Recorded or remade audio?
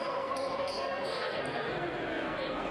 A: remade